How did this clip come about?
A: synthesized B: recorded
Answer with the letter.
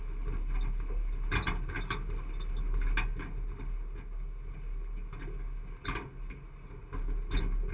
B